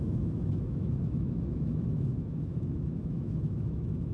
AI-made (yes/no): yes